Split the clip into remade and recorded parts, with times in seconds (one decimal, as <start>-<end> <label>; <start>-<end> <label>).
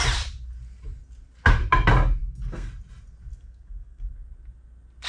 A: 0.0-2.2 recorded; 2.2-2.7 remade; 2.7-3.3 recorded; 3.3-4.1 remade; 4.1-5.1 recorded